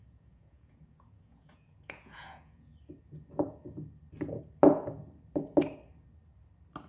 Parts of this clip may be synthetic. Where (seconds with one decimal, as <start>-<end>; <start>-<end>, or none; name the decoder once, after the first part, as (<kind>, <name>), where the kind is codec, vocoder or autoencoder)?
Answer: 0.0-2.7 (vocoder, Vocos)